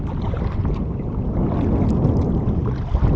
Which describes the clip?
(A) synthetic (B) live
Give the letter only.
B